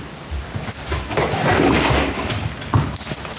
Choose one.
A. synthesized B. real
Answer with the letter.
B